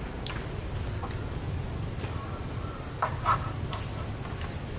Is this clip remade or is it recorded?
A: recorded